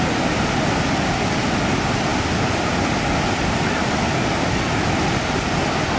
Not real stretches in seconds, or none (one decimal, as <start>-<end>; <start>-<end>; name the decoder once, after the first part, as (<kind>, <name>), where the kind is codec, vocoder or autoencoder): none